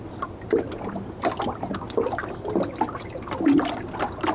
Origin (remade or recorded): recorded